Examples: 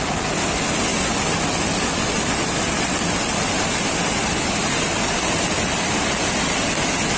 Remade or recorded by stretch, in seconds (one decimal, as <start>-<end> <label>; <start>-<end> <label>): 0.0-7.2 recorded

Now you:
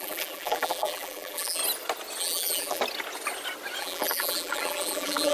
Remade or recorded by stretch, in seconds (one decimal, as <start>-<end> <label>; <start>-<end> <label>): 0.0-1.6 remade; 1.6-2.2 recorded; 2.2-2.8 remade; 2.8-3.8 recorded; 3.8-5.3 remade

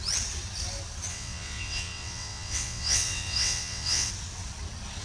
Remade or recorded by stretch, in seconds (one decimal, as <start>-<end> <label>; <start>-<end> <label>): 0.0-1.1 recorded; 1.1-4.1 remade; 4.1-5.0 recorded

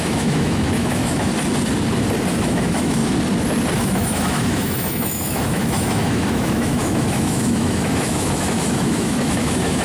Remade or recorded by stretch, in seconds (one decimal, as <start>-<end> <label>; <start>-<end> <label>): 0.0-1.3 remade; 1.3-2.3 recorded; 2.3-3.0 remade; 3.0-3.8 recorded; 3.8-9.8 remade